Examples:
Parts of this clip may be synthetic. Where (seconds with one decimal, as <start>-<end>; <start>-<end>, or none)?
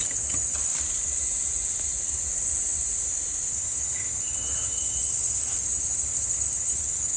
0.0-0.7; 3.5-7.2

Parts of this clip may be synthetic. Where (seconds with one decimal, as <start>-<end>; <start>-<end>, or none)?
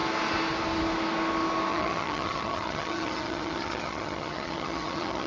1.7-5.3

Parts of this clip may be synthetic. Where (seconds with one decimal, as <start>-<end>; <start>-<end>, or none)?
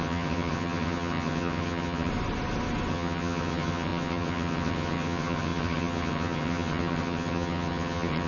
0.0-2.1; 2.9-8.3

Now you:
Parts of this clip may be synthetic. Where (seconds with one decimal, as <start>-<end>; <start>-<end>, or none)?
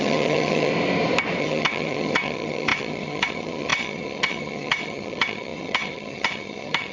0.0-0.7; 1.4-6.9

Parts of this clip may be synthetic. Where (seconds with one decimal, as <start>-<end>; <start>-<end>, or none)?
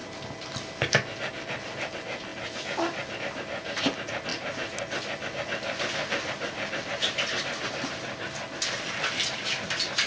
none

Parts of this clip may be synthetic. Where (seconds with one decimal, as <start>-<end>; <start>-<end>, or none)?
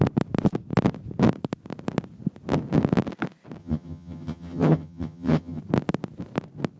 3.6-5.6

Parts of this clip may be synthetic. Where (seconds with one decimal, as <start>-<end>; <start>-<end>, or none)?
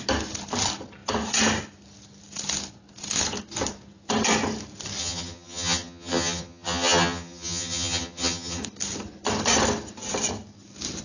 5.0-8.6